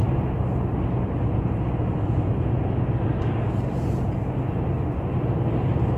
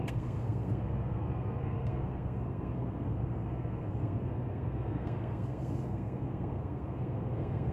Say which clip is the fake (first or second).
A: second